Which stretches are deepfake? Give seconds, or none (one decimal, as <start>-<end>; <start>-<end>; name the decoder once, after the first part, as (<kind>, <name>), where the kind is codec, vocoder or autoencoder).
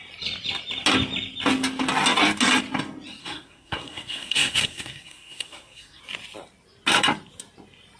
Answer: 3.2-6.0 (codec, SNAC)